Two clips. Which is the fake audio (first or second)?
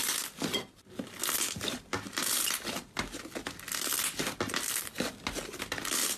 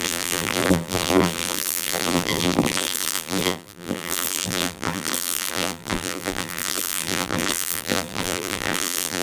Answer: second